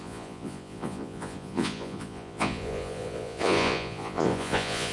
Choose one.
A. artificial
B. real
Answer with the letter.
A